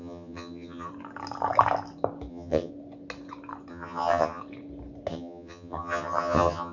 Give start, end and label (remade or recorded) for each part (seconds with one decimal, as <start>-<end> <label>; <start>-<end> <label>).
0.0-0.9 remade; 0.9-2.3 recorded; 2.3-2.7 remade; 2.7-3.7 recorded; 3.7-4.4 remade; 4.4-5.1 recorded; 5.1-6.7 remade